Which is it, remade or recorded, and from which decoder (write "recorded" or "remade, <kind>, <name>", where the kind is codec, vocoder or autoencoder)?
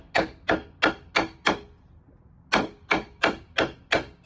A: recorded